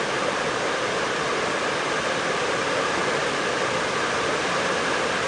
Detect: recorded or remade recorded